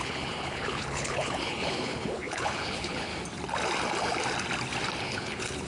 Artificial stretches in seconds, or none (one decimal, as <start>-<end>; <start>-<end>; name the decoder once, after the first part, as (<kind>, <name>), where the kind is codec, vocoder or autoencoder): 0.0-3.1 (codec, HILCodec); 5.0-5.7